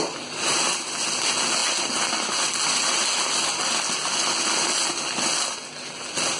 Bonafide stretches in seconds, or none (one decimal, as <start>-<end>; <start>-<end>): 0.0-6.4

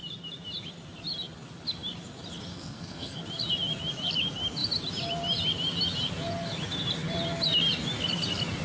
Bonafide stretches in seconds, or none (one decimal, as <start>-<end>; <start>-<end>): 0.0-2.5; 3.2-8.6

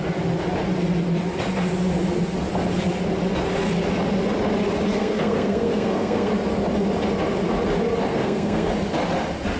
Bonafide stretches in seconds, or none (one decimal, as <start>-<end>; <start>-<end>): 0.0-5.0; 6.3-8.1; 8.7-9.6

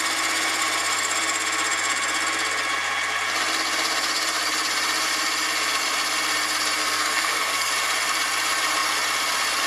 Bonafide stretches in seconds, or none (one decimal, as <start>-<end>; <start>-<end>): 0.0-6.8; 7.7-9.7

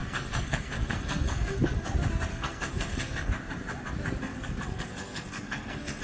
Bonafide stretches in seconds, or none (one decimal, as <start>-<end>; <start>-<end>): 1.9-2.3; 3.3-4.3

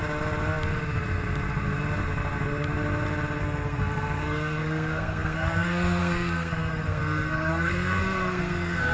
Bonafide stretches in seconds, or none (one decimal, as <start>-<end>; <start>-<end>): 0.0-3.4

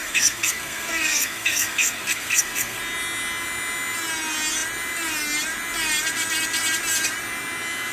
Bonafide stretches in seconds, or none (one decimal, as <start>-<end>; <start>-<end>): 2.8-7.9

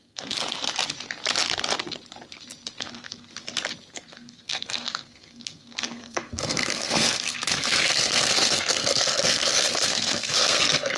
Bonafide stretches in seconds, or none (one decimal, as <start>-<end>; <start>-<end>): 0.4-2.8; 3.3-3.9